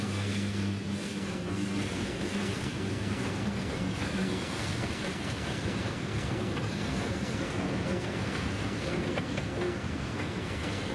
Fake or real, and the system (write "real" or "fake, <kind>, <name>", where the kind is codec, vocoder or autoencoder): fake, codec, SNAC